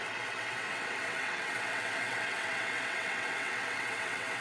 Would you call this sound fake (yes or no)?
yes